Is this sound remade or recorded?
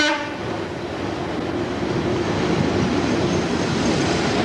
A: recorded